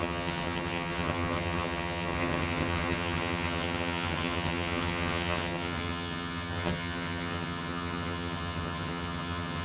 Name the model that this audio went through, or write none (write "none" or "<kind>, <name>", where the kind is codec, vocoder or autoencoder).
vocoder, HiFi-GAN